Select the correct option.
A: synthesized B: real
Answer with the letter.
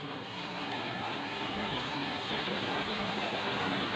A